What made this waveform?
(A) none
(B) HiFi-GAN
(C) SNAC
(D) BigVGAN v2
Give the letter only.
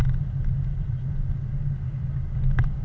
A